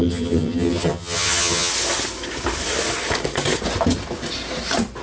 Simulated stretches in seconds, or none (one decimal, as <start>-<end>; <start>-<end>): 0.0-1.7